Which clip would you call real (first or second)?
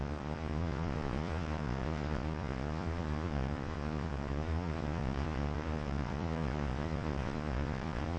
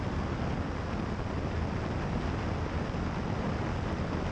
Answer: second